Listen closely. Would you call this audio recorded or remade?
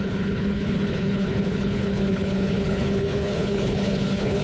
remade